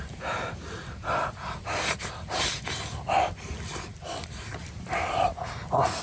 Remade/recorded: recorded